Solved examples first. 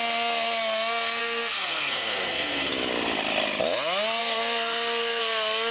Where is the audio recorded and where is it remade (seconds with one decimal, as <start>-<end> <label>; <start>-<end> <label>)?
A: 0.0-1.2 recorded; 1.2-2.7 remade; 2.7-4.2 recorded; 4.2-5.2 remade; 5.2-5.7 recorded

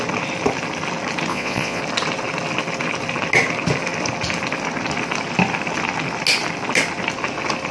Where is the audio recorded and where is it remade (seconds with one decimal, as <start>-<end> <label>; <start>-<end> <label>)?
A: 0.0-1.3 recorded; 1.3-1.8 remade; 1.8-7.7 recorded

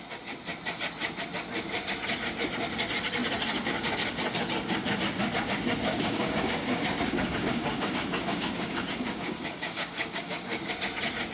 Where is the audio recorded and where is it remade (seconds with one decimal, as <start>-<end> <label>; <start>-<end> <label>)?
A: 0.0-5.9 recorded; 5.9-10.7 remade; 10.7-11.3 recorded

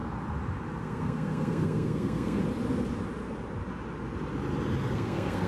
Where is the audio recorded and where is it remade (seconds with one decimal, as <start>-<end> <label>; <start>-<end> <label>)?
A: 0.0-0.8 recorded; 0.8-2.4 remade; 2.4-4.9 recorded; 4.9-5.5 remade